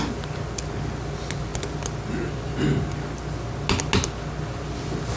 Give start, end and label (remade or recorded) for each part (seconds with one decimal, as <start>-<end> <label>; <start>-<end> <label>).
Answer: 0.0-5.2 recorded